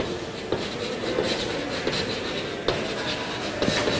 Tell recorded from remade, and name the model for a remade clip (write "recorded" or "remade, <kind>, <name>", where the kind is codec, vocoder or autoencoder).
recorded